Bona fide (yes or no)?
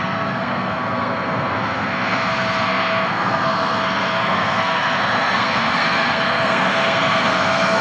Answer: no